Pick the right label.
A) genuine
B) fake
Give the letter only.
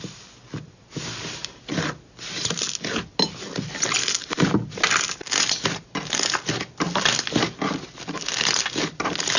A